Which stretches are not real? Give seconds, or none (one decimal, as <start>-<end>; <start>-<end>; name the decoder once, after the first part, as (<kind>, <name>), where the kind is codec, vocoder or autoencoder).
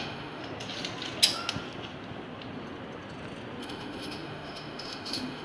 0.0-0.4 (autoencoder, DAC-VAE); 3.6-5.4